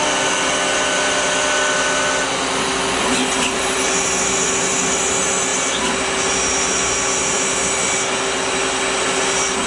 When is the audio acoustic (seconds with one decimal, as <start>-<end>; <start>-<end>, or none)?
0.0-9.7